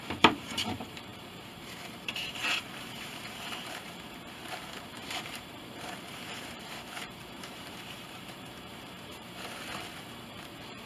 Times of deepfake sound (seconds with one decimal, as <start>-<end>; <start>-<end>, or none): 0.0-10.9